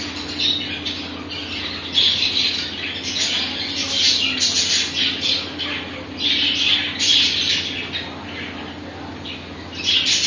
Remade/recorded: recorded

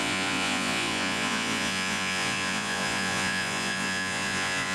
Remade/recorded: remade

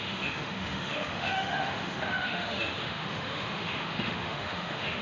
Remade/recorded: remade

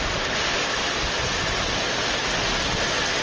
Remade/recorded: recorded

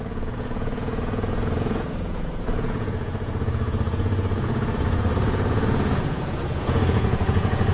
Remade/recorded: remade